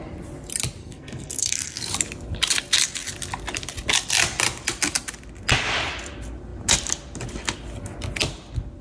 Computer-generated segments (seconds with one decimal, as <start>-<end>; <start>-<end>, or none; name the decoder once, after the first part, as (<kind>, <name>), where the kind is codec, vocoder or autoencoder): 0.8-1.9 (codec, SNAC)